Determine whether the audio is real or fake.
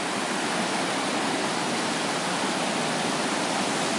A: real